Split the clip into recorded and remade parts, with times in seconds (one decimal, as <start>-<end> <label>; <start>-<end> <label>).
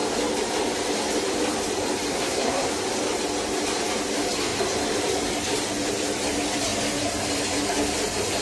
0.0-2.1 recorded; 2.1-2.7 remade; 2.7-8.4 recorded